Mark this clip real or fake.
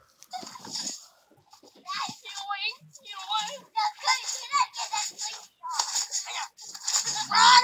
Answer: real